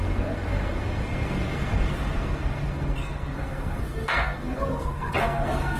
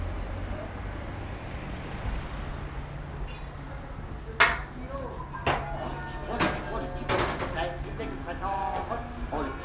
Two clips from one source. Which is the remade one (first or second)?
first